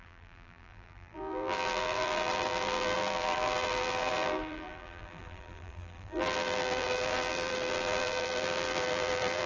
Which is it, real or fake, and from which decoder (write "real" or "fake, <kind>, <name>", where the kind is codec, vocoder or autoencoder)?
fake, vocoder, BigVGAN v2